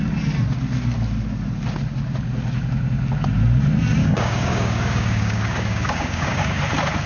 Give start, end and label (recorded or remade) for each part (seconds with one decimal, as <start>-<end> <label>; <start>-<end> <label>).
0.0-4.0 recorded; 4.0-6.6 remade; 6.6-7.1 recorded